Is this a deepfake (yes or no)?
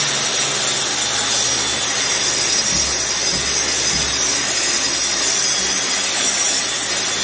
no